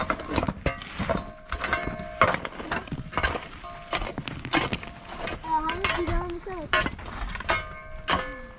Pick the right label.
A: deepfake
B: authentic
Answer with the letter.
B